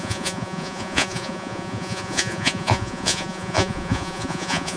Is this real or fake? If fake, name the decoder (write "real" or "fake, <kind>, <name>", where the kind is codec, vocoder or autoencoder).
fake, vocoder, Vocos